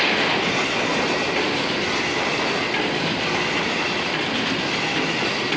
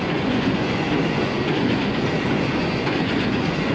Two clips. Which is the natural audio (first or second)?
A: first